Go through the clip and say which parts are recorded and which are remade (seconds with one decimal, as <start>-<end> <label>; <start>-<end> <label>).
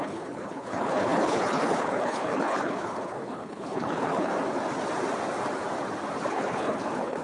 0.0-4.3 remade; 4.3-6.3 recorded; 6.3-7.2 remade